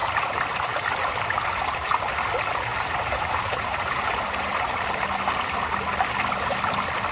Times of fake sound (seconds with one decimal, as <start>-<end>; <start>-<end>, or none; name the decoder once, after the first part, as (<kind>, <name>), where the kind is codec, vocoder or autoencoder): 0.0-2.1 (vocoder, BigVGAN v2); 2.7-4.7